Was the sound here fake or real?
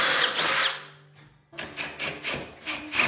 real